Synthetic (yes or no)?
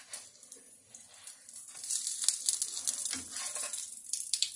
no